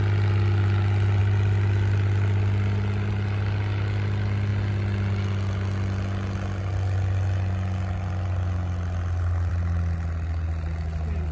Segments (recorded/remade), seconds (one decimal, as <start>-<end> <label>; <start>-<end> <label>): 0.0-11.3 recorded